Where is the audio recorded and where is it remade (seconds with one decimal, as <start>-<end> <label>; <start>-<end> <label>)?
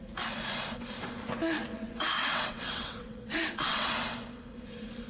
0.0-1.7 recorded; 1.7-3.9 remade; 3.9-5.1 recorded